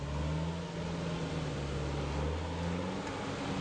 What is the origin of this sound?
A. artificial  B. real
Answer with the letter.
B